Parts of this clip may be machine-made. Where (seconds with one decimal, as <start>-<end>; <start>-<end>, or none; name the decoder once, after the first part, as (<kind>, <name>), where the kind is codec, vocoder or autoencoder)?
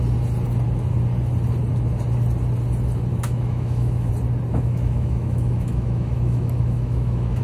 3.1-4.1 (autoencoder, DAC-VAE); 4.5-7.4